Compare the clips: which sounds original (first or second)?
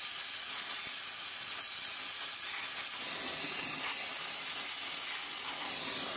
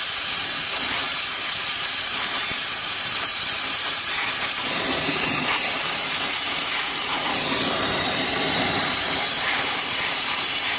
first